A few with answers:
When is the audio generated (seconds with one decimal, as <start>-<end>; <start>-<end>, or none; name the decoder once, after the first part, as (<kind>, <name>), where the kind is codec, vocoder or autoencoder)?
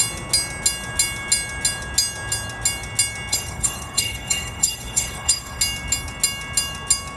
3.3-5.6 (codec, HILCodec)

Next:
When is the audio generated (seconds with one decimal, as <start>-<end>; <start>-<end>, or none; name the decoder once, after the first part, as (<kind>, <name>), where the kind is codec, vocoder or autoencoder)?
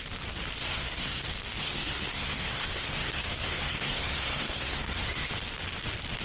0.6-1.2 (codec, SNAC); 1.6-5.3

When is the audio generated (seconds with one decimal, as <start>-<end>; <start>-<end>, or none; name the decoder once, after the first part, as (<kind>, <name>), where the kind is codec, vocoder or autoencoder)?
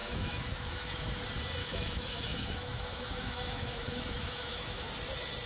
0.0-1.1 (autoencoder, DAC-VAE); 1.6-4.9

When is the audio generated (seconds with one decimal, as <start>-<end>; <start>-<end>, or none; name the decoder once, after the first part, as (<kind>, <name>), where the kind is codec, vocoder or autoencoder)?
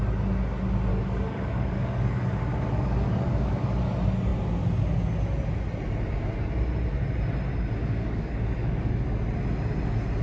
0.9-3.8 (codec, DAC); 7.8-8.9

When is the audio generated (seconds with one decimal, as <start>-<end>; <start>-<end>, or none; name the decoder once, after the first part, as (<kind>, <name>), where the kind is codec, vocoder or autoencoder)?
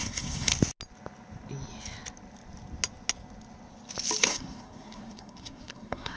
0.0-0.5 (codec, SNAC); 4.2-6.2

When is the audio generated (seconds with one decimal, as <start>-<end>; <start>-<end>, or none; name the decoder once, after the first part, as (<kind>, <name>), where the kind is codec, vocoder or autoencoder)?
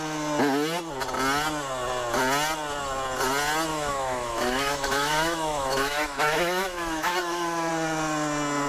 3.7-7.7 (autoencoder, DAC-VAE)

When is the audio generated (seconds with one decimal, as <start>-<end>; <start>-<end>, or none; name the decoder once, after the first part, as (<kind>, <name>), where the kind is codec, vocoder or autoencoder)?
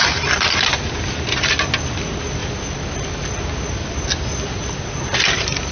none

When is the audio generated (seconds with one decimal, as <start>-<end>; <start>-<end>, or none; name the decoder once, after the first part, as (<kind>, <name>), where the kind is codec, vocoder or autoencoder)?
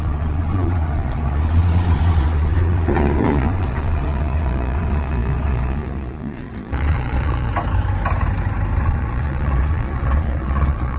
0.0-7.5 (vocoder, Vocos); 8.8-11.0